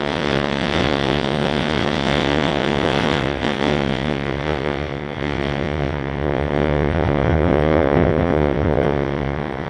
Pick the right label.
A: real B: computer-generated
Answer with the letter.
B